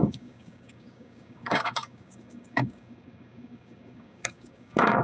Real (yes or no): no